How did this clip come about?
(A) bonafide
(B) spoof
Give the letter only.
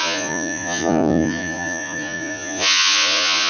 B